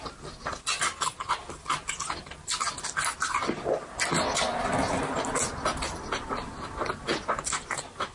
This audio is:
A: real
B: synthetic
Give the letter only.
A